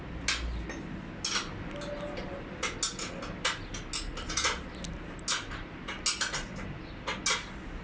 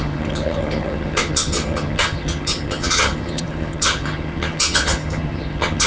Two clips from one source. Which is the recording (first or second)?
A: first